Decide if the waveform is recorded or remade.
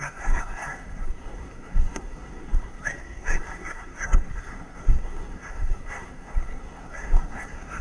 remade